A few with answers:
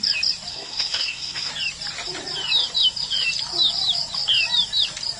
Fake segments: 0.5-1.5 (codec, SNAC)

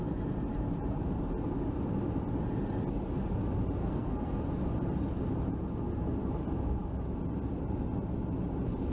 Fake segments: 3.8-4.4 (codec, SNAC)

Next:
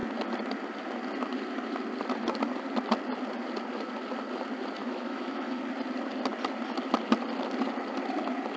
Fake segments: 4.8-5.6 (autoencoder, DAC-VAE)

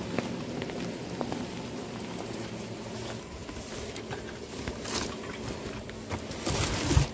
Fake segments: none

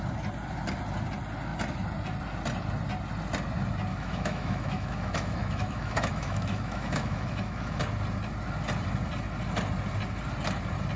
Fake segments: 3.9-7.8 (autoencoder, DAC-VAE)